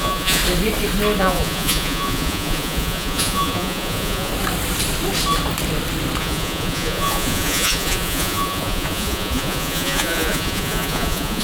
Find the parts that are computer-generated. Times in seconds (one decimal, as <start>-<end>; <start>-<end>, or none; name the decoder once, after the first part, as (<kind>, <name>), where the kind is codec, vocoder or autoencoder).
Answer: 0.0-0.4 (vocoder, Vocos); 1.2-4.3; 6.2-11.4

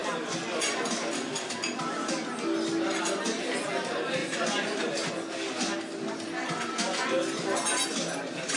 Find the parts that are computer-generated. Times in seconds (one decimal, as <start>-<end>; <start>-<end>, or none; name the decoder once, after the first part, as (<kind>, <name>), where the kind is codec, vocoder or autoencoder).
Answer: none

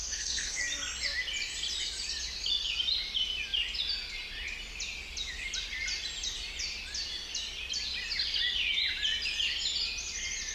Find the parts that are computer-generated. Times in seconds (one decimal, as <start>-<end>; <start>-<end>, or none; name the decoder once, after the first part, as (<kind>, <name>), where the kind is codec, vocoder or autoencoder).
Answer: 0.0-0.6 (codec, SNAC)

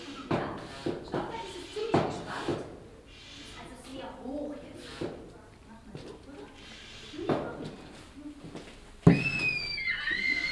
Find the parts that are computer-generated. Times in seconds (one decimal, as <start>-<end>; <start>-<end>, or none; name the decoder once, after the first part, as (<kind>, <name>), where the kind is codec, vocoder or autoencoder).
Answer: none

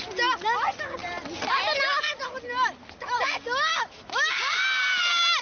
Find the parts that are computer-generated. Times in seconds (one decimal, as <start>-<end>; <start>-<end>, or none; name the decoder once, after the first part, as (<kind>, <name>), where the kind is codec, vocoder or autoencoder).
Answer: 3.7-4.4 (autoencoder, DAC-VAE)